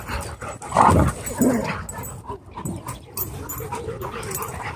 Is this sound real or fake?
real